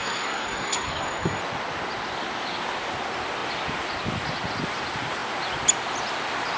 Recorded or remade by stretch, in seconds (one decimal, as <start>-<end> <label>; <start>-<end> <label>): 0.0-1.4 remade; 1.4-6.6 recorded